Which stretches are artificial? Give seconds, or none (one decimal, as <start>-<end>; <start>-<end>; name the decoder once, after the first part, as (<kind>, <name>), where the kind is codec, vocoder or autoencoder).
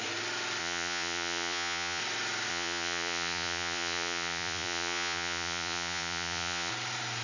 0.6-2.0 (vocoder, Vocos); 2.5-6.7